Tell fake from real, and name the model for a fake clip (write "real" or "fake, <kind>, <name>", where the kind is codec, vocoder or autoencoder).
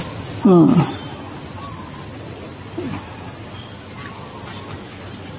real